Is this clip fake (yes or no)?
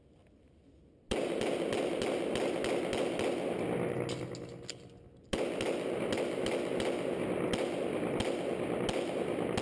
no